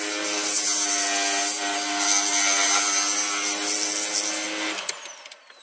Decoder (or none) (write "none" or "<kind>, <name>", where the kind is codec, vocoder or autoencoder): none